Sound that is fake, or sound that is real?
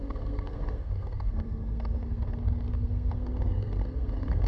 fake